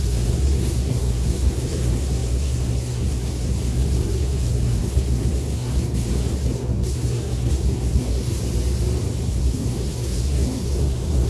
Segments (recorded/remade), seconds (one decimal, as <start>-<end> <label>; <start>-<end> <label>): 0.0-8.4 remade; 8.4-9.3 recorded; 9.3-11.3 remade